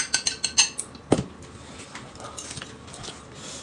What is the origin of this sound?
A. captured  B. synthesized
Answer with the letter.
A